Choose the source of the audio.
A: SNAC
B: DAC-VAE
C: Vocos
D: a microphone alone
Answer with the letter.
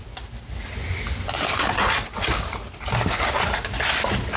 D